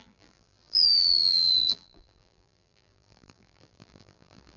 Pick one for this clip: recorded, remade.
remade